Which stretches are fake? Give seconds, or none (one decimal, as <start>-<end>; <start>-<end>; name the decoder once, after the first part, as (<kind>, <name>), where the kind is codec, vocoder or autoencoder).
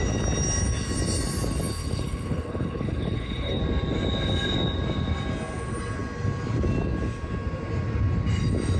1.8-3.6 (codec, HILCodec)